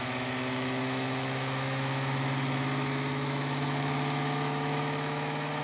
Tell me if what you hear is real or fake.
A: fake